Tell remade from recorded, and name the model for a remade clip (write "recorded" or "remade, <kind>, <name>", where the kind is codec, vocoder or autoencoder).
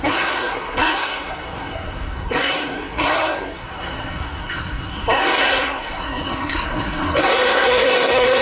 remade, codec, SNAC